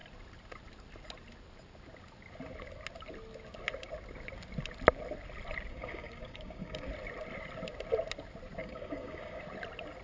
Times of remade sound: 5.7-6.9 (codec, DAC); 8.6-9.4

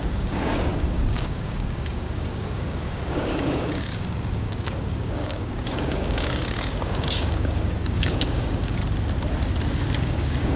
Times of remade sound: 0.0-8.8 (codec, DAC); 10.0-10.6

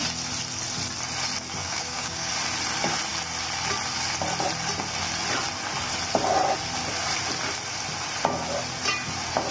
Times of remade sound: 1.6-2.3 (codec, DAC)

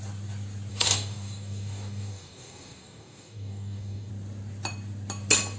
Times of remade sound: 0.7-4.1 (codec, DAC)

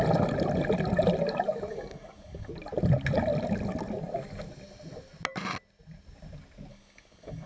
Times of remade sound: 1.7-2.5 (codec, DAC); 6.7-7.5

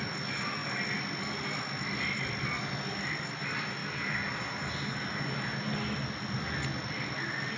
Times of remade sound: none